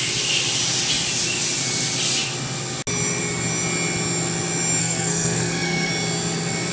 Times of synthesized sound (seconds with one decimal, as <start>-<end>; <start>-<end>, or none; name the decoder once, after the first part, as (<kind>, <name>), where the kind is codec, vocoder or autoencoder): 4.8-5.9 (codec, SNAC)